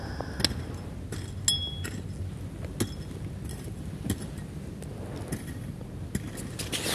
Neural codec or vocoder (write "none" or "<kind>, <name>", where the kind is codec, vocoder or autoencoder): none